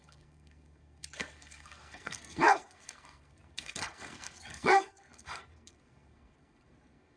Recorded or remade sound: remade